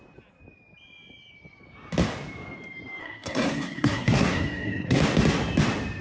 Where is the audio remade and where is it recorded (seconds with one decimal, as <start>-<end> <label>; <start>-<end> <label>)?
0.0-3.0 recorded; 3.0-5.0 remade; 5.0-6.0 recorded